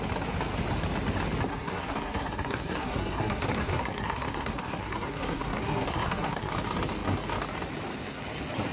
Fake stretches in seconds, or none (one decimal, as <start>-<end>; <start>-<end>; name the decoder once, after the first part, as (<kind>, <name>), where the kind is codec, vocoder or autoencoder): 1.5-6.5 (codec, SNAC)